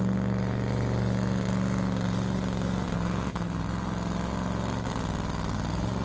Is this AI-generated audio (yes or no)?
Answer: no